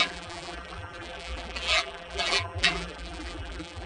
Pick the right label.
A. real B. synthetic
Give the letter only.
B